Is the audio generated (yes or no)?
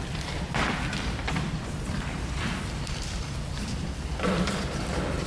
yes